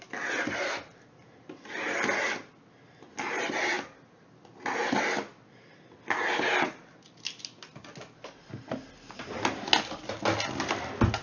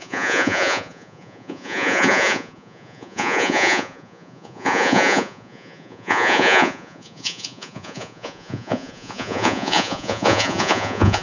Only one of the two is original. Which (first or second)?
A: first